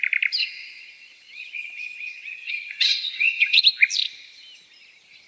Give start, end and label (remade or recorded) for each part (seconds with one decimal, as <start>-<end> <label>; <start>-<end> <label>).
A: 0.0-0.4 recorded; 0.4-3.6 remade; 3.6-5.3 recorded